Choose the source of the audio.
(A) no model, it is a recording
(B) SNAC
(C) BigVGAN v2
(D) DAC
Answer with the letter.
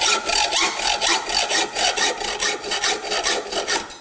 A